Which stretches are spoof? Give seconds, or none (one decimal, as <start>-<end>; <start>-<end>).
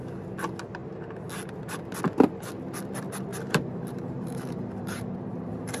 3.3-5.8